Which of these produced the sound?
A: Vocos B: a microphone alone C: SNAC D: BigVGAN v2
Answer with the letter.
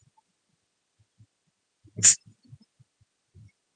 B